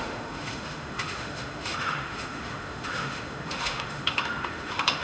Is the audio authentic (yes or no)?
no